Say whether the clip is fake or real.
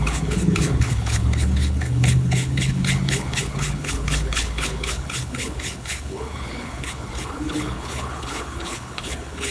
fake